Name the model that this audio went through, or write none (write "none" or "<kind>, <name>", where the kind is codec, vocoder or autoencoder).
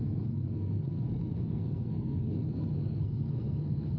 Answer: codec, SNAC